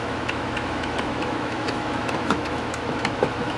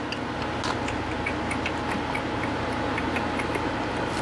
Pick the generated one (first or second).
first